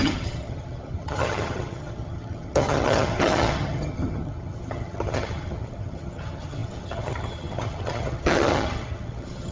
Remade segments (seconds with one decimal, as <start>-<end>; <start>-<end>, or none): 0.0-9.5